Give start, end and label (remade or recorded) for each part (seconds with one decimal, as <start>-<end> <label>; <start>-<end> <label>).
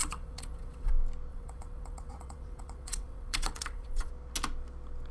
0.0-0.9 remade; 0.9-1.3 recorded; 1.3-4.1 remade; 4.1-5.1 recorded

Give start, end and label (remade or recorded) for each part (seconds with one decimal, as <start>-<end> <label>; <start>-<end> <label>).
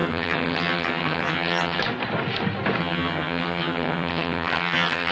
0.0-1.8 remade; 1.8-2.8 recorded; 2.8-5.1 remade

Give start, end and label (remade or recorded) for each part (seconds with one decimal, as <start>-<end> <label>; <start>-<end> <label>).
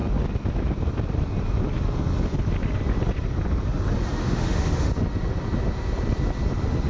0.0-4.2 recorded; 4.2-4.9 remade; 4.9-6.9 recorded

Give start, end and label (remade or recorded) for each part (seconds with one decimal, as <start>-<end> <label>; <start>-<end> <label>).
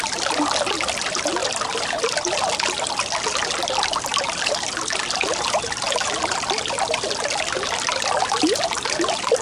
0.0-9.4 recorded